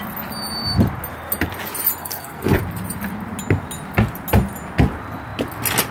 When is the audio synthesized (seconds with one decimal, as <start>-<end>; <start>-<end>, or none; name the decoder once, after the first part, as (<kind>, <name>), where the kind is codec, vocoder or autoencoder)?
2.0-2.6 (codec, SNAC)